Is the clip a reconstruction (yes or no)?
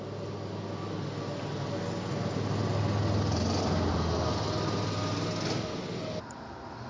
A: no